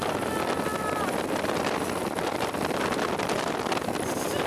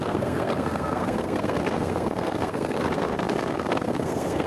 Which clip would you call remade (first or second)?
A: second